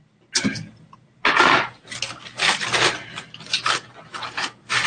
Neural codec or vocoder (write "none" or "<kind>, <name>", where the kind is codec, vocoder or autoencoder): none